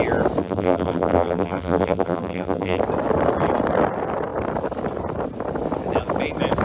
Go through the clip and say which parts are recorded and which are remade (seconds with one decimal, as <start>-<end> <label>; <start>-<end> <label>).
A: 0.0-0.4 recorded; 0.4-2.8 remade; 2.8-6.6 recorded

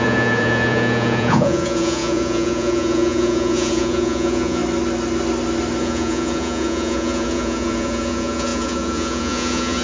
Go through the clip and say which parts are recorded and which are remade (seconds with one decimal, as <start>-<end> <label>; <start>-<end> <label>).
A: 0.0-4.6 remade; 4.6-5.8 recorded; 5.8-9.8 remade